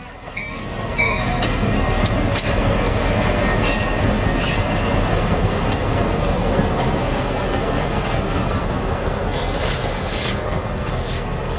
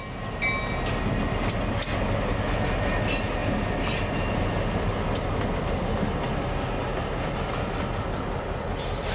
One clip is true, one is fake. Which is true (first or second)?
second